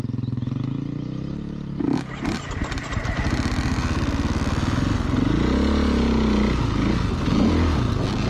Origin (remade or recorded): recorded